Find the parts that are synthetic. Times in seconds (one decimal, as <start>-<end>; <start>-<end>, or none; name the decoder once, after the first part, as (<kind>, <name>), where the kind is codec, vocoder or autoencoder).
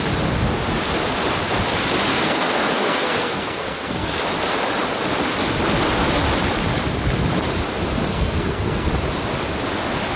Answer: 2.1-4.2 (codec, SNAC); 8.1-8.9